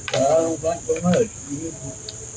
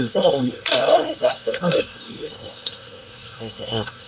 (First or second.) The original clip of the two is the first